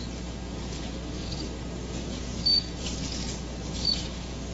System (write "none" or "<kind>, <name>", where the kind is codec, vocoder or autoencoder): none